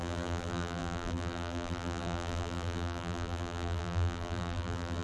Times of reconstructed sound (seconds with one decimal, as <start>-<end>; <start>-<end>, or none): 0.0-5.0